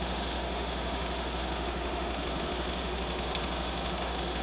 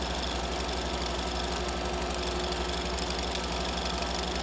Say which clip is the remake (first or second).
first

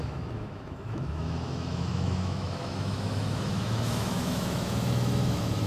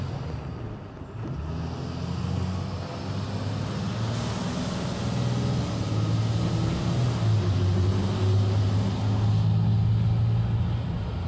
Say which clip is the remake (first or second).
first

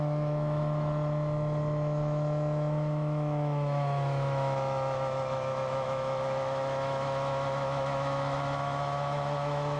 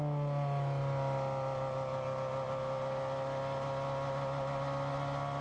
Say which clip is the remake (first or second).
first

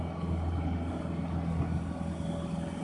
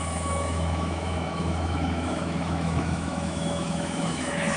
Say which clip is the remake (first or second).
second